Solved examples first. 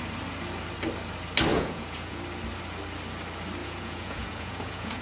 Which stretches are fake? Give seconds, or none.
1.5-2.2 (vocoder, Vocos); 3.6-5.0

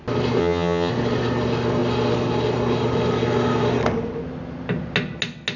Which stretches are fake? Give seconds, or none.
0.4-0.9 (vocoder, HiFi-GAN)

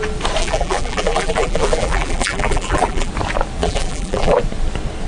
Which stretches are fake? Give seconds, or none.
0.4-3.1 (vocoder, BigVGAN v2); 3.6-4.4

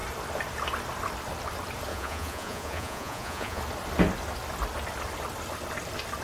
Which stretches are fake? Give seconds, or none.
1.9-3.6 (vocoder, Vocos)

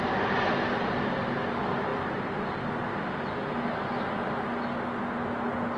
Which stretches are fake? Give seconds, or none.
none

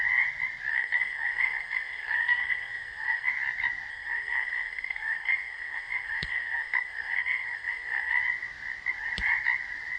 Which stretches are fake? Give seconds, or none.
0.7-3.3 (codec, SNAC); 3.9-8.2